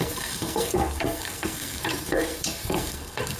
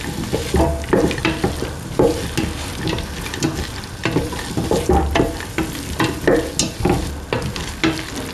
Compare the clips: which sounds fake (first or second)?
first